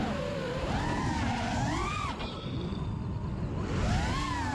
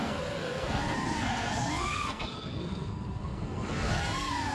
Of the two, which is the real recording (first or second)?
first